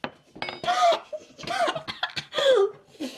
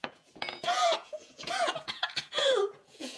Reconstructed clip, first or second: second